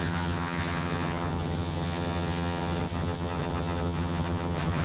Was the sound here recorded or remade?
remade